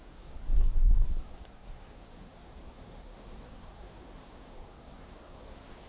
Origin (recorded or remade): remade